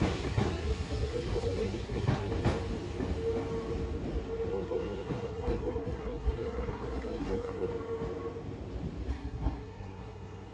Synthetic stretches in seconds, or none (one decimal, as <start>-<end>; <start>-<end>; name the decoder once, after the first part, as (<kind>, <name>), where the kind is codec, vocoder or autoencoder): 0.0-2.3 (codec, SNAC); 4.5-7.7; 9.1-10.5

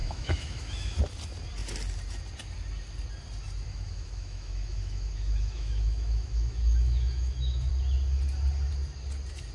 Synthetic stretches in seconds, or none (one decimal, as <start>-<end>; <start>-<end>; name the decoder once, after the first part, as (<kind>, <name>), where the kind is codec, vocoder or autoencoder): 0.0-1.0 (autoencoder, DAC-VAE); 3.7-7.7

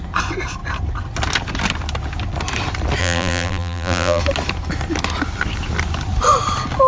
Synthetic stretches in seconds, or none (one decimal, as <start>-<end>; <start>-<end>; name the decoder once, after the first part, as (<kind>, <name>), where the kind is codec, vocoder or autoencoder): 3.0-4.2 (vocoder, BigVGAN v2)

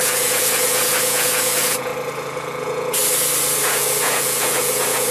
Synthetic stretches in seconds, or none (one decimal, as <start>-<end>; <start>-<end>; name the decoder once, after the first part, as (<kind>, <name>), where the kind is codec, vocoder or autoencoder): 0.0-1.9 (vocoder, Vocos); 2.6-3.0; 3.7-5.1

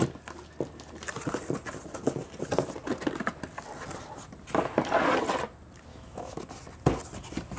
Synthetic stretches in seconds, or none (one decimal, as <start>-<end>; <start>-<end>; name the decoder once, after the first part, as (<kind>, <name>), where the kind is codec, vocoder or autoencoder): 5.9-6.4 (autoencoder, DAC-VAE)

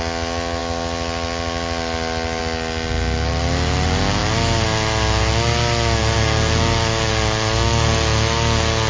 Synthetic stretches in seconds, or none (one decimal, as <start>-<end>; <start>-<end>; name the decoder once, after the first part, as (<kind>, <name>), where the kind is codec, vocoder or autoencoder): none

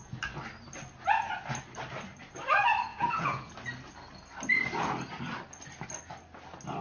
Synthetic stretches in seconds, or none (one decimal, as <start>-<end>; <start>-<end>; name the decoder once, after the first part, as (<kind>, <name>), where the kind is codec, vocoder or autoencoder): 2.9-3.5 (vocoder, Vocos)